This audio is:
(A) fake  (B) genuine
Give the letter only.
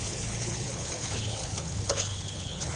A